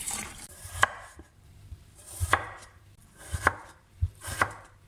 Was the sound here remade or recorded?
remade